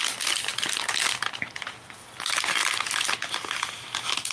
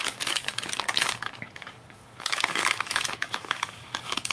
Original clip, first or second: first